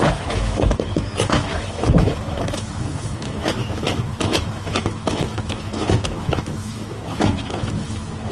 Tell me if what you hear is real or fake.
fake